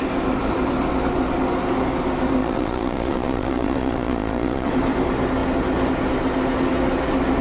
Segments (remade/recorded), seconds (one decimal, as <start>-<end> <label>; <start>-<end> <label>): 0.0-2.4 recorded; 2.4-4.7 remade; 4.7-7.4 recorded

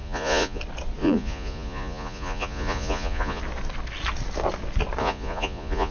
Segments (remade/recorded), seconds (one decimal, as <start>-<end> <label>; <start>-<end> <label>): 0.0-0.6 remade; 0.6-1.0 recorded; 1.0-3.4 remade; 3.4-5.0 recorded; 5.0-5.9 remade

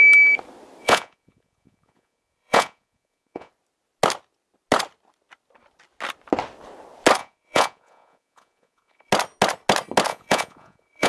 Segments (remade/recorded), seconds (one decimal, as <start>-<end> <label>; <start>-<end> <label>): 0.0-0.8 recorded; 0.8-3.5 remade; 3.5-7.2 recorded; 7.2-9.1 remade; 9.1-10.1 recorded; 10.1-11.1 remade

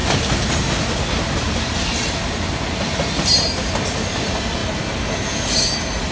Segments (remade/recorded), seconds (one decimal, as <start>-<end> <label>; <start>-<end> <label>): 0.0-6.1 recorded

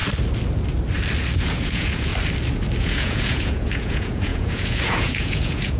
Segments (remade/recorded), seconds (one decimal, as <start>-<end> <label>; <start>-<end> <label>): 0.0-1.4 recorded; 1.4-2.1 remade; 2.1-2.8 recorded; 2.8-5.8 remade

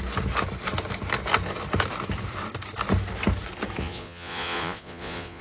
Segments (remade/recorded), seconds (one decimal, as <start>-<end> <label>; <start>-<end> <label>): 0.0-3.8 recorded; 3.8-5.4 remade

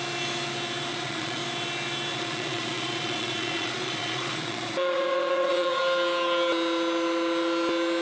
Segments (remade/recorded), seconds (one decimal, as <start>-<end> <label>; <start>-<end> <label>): 0.0-0.9 recorded; 0.9-1.4 remade; 1.4-2.1 recorded; 2.1-5.8 remade; 5.8-8.0 recorded

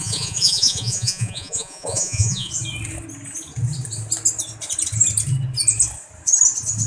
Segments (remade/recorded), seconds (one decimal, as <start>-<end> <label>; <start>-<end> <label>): 0.0-2.5 remade; 2.5-6.9 recorded